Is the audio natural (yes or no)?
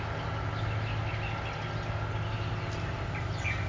yes